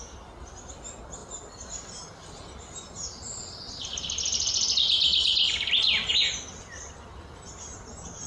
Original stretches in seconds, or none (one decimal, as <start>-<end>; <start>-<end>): 0.0-8.3